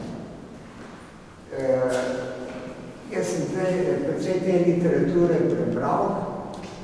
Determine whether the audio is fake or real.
real